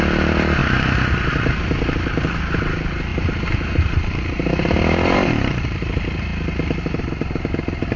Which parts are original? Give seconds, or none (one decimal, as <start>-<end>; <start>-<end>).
0.6-1.3; 6.3-7.0